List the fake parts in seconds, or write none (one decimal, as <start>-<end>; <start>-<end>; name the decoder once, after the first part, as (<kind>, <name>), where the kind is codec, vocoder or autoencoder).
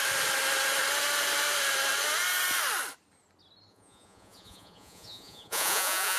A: 3.7-6.2 (vocoder, Vocos)